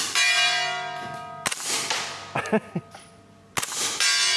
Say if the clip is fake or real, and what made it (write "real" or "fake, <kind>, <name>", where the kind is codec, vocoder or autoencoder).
real